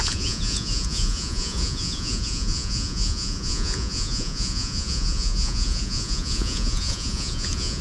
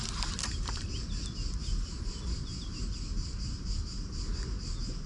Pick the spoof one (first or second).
first